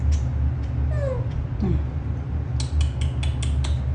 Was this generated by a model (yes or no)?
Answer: no